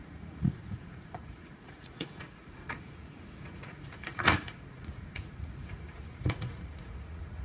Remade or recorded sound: remade